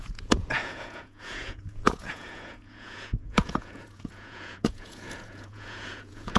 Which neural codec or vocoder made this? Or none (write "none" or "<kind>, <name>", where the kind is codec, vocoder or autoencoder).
vocoder, Vocos